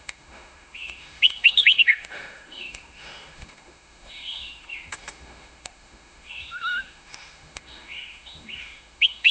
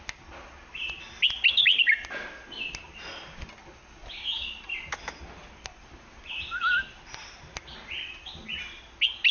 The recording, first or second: second